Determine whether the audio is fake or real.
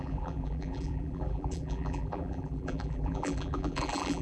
fake